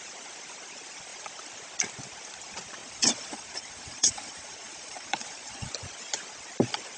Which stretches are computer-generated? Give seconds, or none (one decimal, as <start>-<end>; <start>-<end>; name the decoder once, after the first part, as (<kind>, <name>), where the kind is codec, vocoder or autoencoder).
2.8-5.7 (vocoder, Vocos)